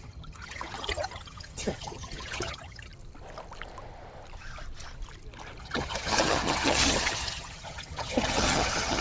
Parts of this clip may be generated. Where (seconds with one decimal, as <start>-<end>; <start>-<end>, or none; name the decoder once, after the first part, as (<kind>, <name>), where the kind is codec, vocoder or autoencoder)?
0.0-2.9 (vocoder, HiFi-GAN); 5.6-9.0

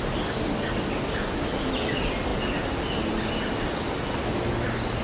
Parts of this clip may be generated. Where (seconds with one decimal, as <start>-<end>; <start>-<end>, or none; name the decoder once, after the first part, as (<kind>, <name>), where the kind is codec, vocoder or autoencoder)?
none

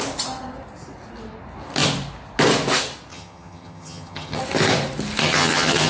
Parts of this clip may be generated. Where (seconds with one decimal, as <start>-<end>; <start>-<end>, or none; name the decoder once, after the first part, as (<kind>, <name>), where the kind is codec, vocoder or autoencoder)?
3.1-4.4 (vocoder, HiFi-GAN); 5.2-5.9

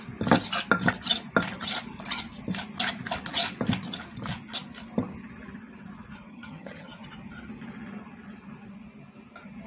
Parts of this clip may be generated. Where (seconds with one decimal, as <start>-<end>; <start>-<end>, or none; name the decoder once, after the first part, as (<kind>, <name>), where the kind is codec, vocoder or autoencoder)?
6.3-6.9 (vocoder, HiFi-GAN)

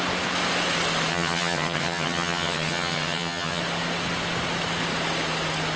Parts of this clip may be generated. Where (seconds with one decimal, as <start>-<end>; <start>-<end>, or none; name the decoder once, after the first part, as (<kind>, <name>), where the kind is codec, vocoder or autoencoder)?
1.1-3.6 (vocoder, HiFi-GAN)

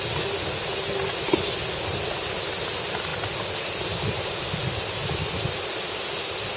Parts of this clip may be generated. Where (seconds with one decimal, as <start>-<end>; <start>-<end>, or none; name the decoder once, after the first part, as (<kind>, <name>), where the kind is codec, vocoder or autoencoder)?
none